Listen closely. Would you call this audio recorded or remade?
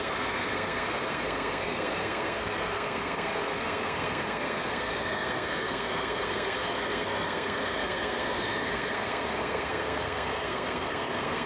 remade